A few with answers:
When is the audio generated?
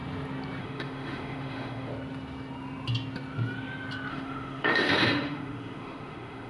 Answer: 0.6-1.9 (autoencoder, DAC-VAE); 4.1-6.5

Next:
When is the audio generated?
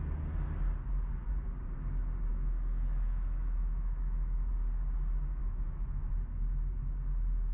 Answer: 2.3-4.5 (autoencoder, DAC-VAE); 5.4-6.1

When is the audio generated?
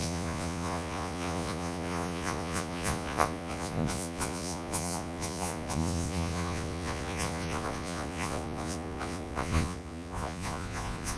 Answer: 0.0-11.2 (vocoder, Vocos)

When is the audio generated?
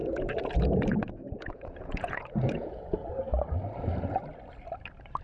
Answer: 0.0-3.1 (vocoder, Vocos)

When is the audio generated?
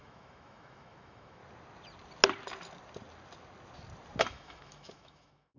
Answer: 0.0-1.4 (autoencoder, DAC-VAE); 4.2-5.6